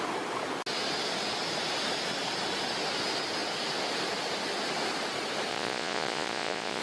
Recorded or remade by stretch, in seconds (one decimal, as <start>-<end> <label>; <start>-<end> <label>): 0.0-5.5 recorded; 5.5-6.8 remade